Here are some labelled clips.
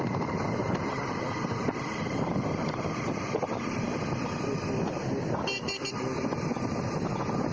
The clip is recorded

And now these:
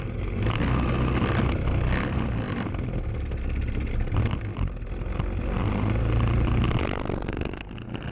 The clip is recorded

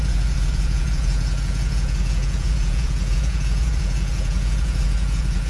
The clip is remade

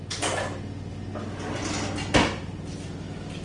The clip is recorded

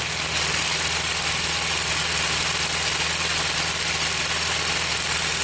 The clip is recorded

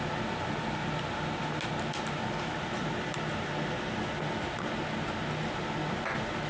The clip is recorded